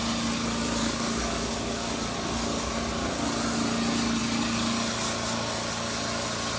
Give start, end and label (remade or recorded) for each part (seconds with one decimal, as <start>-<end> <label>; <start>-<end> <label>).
0.0-0.8 recorded; 0.8-1.9 remade; 1.9-6.6 recorded